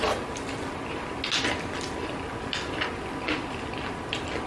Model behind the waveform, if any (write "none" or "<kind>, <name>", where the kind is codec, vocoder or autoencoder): none